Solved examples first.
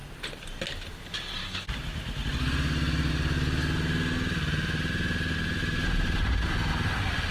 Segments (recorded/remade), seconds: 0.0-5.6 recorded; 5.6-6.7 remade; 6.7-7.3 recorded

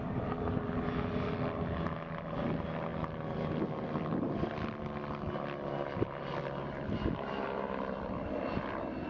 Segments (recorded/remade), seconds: 0.0-9.1 recorded

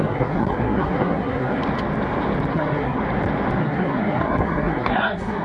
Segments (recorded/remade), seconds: 0.0-1.6 remade; 1.6-2.5 recorded; 2.5-3.0 remade; 3.0-3.6 recorded; 3.6-5.4 remade

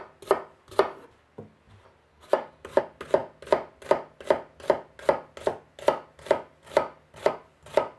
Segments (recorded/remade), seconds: 0.0-2.1 recorded; 2.1-2.8 remade; 2.8-8.0 recorded

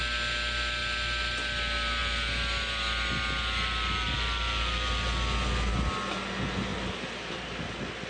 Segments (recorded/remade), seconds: 0.0-6.7 recorded; 6.7-7.3 remade; 7.3-8.1 recorded

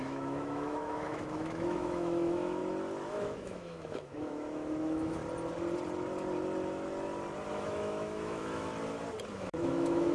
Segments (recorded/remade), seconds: 0.0-2.6 remade; 2.6-3.1 recorded; 3.1-5.2 remade; 5.2-7.5 recorded; 7.5-8.7 remade; 8.7-9.3 recorded; 9.3-10.1 remade